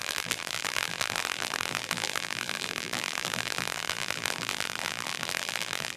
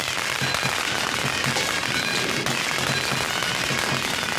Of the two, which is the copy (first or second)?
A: first